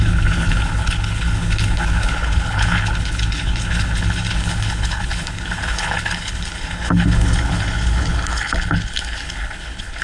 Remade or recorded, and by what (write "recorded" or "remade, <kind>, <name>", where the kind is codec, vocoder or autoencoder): remade, codec, HILCodec